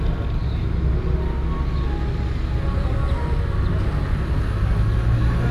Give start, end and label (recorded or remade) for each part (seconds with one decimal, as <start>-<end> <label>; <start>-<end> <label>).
0.0-5.5 recorded